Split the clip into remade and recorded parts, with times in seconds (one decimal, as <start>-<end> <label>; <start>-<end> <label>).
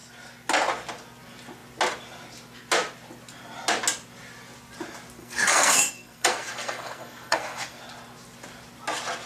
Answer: 0.0-5.2 recorded; 5.2-7.8 remade; 7.8-9.3 recorded